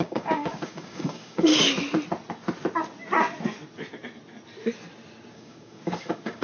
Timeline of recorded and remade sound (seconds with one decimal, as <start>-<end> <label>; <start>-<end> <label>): 0.0-1.5 remade; 1.5-5.3 recorded; 5.3-6.4 remade